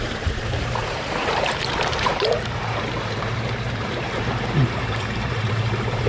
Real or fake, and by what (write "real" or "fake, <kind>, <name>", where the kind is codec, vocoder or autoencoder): fake, vocoder, BigVGAN v2